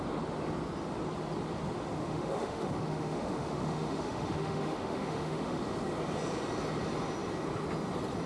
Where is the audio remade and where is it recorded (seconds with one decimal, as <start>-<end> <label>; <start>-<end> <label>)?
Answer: 0.0-2.0 recorded; 2.0-5.6 remade; 5.6-8.3 recorded